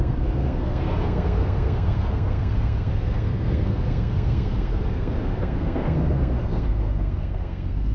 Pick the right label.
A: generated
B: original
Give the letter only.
A